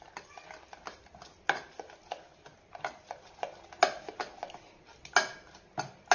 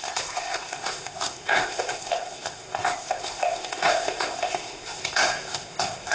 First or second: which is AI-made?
second